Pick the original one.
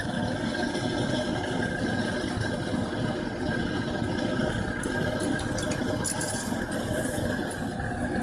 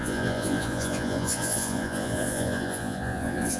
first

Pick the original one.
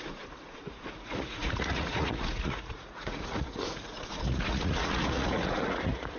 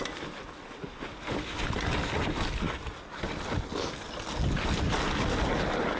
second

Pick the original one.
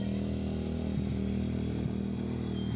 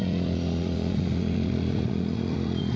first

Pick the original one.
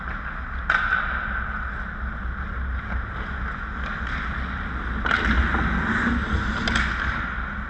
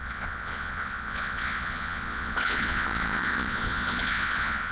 first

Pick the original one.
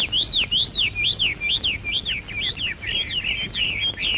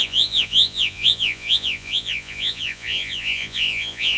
first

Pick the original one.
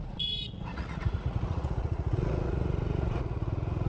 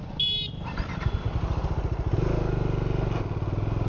second